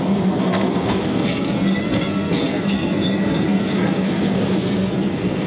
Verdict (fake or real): fake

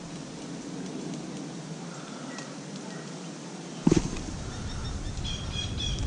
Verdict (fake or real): real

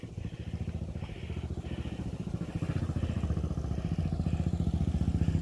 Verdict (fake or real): real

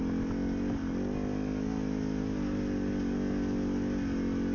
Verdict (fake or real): real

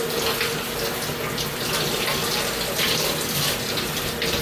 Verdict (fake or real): real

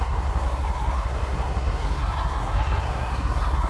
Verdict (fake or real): fake